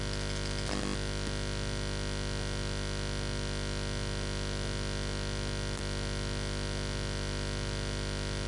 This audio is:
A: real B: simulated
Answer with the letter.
A